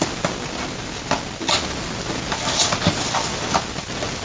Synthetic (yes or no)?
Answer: no